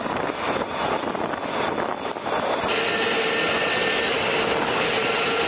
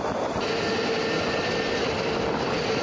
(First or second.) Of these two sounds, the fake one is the second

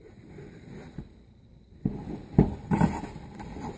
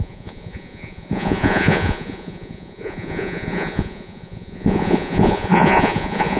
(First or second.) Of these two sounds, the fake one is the second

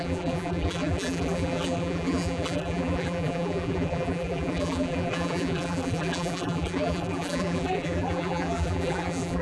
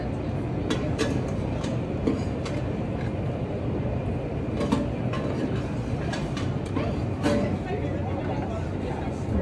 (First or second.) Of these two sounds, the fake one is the first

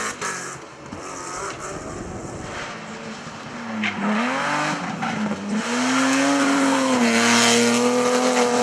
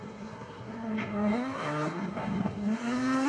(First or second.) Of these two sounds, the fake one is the second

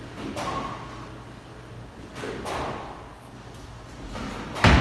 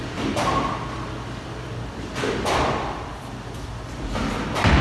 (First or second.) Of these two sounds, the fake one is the second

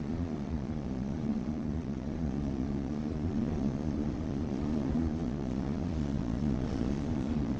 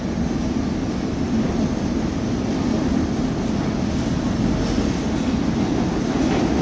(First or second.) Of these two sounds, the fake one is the first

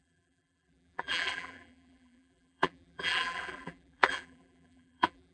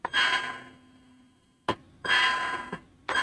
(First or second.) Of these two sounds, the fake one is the first